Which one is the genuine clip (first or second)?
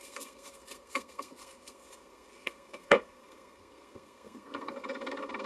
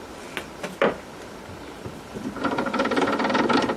second